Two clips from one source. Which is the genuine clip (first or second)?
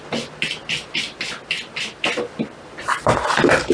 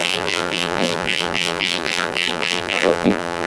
first